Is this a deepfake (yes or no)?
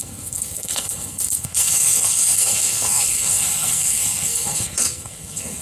yes